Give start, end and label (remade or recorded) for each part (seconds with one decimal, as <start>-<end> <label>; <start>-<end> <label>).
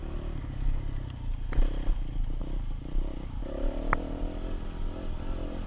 0.0-5.7 recorded